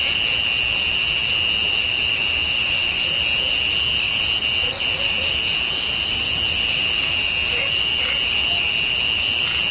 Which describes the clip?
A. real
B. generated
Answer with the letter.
B